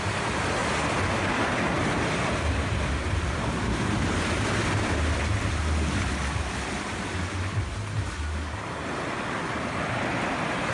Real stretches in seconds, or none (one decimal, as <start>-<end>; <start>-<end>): 0.0-0.6; 5.4-10.7